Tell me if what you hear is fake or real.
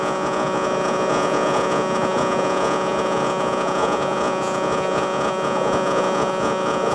fake